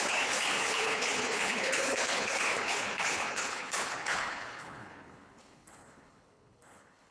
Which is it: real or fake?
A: fake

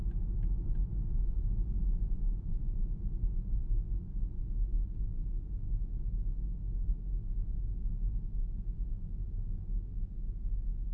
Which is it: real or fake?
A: real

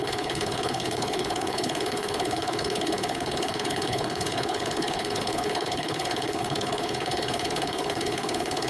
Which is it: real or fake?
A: fake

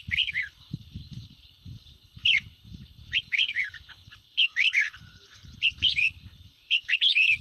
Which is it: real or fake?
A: fake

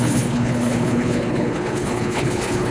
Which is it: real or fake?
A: fake